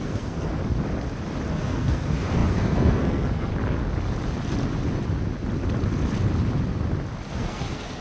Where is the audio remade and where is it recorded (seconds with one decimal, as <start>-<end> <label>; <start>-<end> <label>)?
0.0-0.6 remade; 0.6-1.5 recorded; 1.5-3.5 remade; 3.5-7.3 recorded; 7.3-8.0 remade